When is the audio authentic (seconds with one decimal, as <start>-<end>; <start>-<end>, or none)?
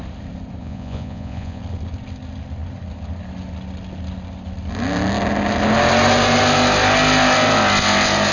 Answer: 0.0-0.6; 1.6-8.3